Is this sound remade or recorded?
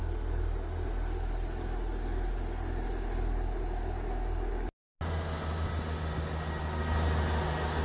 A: recorded